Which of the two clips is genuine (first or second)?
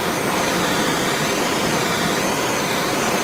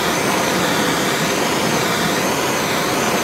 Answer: second